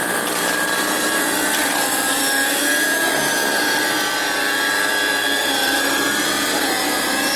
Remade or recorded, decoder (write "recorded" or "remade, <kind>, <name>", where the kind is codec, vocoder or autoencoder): remade, vocoder, BigVGAN v2